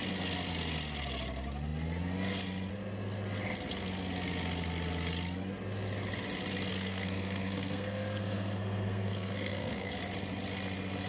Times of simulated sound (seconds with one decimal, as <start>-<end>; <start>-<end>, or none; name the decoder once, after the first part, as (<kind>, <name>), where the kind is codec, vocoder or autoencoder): 6.7-9.9 (codec, SNAC)